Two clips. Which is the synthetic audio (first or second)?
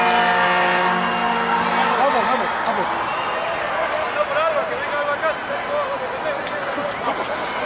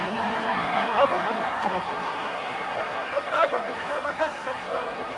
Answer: second